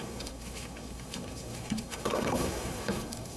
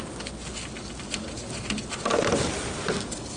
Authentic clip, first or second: second